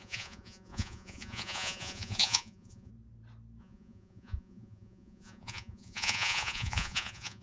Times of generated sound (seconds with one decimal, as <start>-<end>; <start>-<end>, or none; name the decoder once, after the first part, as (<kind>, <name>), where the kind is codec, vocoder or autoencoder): 0.0-2.9 (vocoder, Vocos); 3.6-7.4